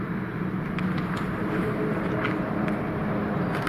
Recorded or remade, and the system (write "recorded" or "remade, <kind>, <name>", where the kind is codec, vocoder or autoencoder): recorded